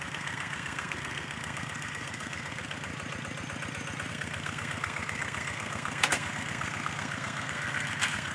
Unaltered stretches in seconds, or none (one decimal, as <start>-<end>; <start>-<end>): 2.9-4.1